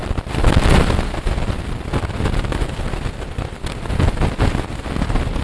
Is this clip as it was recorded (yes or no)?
yes